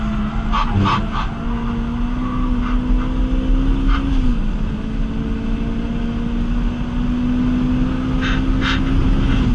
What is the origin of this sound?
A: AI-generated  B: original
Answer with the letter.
B